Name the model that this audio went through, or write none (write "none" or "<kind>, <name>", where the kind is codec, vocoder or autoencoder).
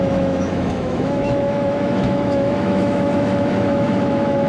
autoencoder, DAC-VAE